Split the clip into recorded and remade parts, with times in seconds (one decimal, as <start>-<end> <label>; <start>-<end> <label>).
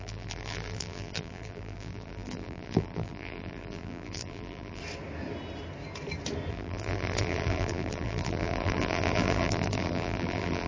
0.0-4.8 remade; 4.8-6.5 recorded; 6.5-10.7 remade